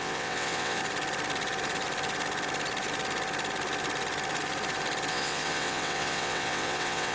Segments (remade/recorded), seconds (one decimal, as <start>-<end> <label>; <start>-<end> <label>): 0.0-0.8 remade; 0.8-5.1 recorded; 5.1-7.1 remade